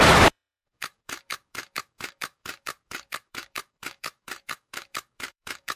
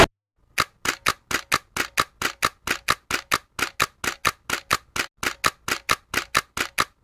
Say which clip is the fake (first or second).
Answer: first